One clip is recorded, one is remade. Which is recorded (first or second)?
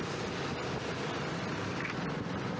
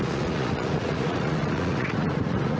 first